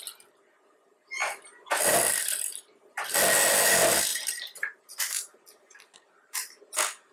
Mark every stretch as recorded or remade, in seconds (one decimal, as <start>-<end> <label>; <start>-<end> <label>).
0.0-4.1 recorded; 4.1-6.6 remade; 6.6-7.1 recorded

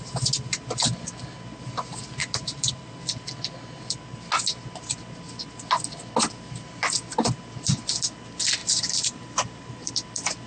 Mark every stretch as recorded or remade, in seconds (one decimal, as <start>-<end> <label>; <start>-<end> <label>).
0.0-2.2 recorded; 2.2-2.9 remade; 2.9-8.6 recorded; 8.6-9.9 remade; 9.9-10.5 recorded